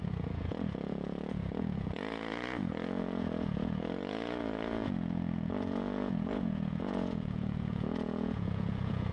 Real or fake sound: fake